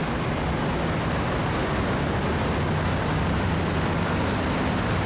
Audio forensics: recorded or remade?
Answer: recorded